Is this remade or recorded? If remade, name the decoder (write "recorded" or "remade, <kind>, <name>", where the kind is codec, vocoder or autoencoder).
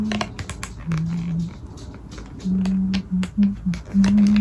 recorded